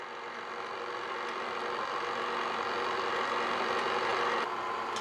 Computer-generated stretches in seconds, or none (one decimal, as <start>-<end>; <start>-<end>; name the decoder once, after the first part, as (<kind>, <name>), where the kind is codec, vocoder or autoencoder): none